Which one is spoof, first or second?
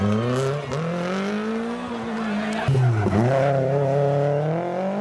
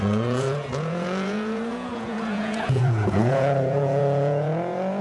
second